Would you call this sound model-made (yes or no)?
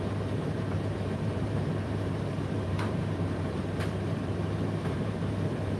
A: yes